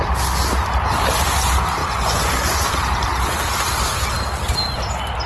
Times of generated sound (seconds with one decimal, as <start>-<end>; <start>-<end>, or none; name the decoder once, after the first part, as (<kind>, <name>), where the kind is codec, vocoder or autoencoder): 1.8-2.7 (vocoder, Vocos)